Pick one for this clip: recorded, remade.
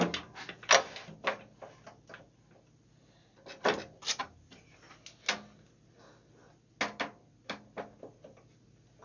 recorded